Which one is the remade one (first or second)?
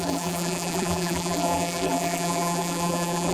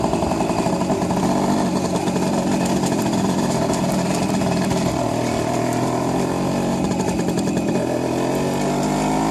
first